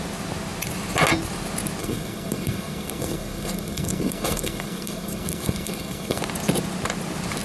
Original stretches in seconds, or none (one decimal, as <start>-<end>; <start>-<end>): 0.0-1.8; 6.2-7.4